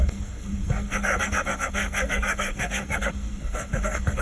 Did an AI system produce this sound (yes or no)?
yes